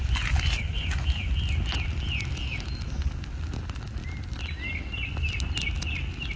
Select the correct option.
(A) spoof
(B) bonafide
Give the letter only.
B